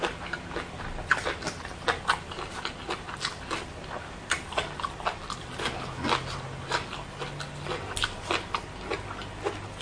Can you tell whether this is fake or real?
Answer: real